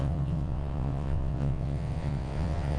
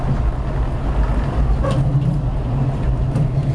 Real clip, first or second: second